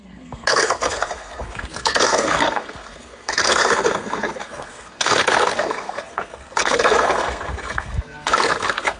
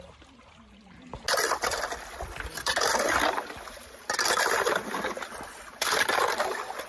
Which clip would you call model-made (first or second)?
first